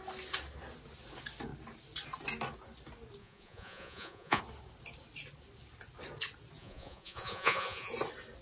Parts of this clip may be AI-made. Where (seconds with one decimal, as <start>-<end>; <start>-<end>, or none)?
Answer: 3.2-4.4; 6.6-7.9